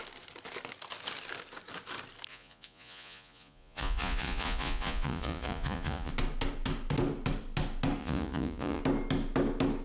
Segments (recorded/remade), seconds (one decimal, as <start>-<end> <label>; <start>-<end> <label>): 0.0-2.3 recorded; 2.3-6.1 remade; 6.1-8.0 recorded; 8.0-8.8 remade; 8.8-9.8 recorded